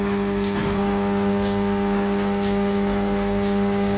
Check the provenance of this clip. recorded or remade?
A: remade